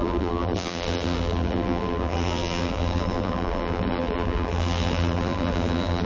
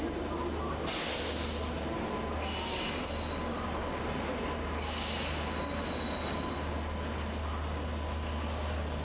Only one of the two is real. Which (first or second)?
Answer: second